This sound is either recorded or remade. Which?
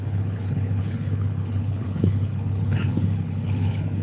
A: remade